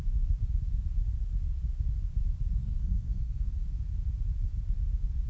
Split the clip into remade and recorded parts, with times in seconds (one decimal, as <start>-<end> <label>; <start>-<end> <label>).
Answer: 0.0-2.6 recorded; 2.6-3.5 remade; 3.5-5.3 recorded